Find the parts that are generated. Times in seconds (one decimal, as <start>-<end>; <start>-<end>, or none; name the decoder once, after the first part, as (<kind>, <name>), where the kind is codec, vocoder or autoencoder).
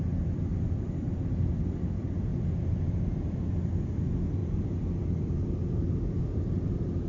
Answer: 0.0-0.5 (vocoder, BigVGAN v2); 1.7-2.3; 3.0-7.1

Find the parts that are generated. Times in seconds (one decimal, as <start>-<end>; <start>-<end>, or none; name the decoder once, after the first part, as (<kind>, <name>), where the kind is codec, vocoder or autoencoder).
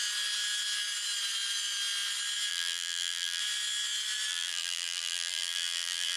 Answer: 2.5-3.4 (vocoder, BigVGAN v2); 4.3-6.2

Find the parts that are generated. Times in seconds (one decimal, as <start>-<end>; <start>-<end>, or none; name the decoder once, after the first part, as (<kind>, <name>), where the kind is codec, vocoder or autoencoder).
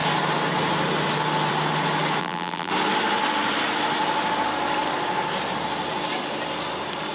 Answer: 2.2-2.7 (vocoder, BigVGAN v2)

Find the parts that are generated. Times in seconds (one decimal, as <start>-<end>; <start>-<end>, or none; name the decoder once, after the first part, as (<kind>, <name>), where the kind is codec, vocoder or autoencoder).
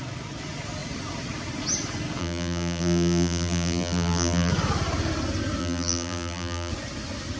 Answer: 2.2-4.5 (vocoder, BigVGAN v2); 5.6-6.7